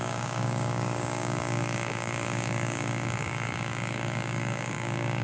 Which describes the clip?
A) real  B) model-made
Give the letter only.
B